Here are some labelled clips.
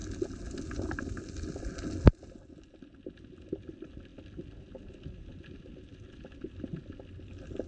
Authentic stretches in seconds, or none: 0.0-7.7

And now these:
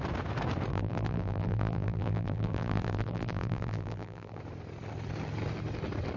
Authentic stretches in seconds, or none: 0.0-0.7; 4.4-6.2

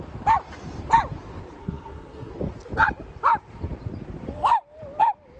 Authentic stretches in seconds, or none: 0.0-1.6; 2.3-5.4

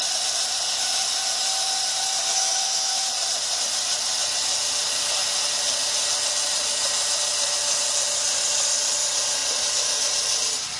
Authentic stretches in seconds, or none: 0.0-2.3; 3.1-10.8

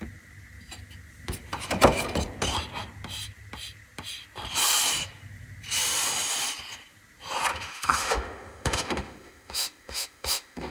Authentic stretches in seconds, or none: 0.0-7.5

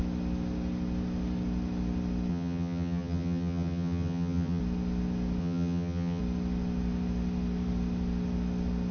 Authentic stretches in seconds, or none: 0.0-2.3; 4.6-5.4; 6.2-8.9

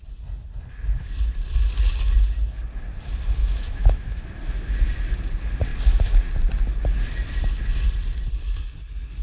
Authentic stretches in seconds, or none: 0.0-3.4; 4.2-9.2